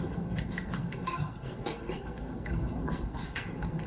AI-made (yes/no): yes